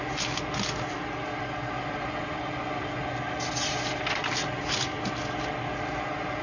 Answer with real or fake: real